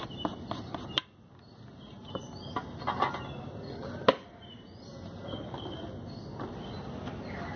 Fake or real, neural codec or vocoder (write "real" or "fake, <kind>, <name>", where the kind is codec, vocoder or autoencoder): real